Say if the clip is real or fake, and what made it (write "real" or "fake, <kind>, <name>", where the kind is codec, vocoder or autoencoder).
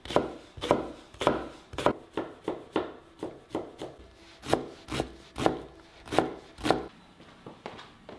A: real